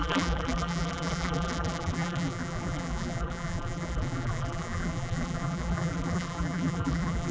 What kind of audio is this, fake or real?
fake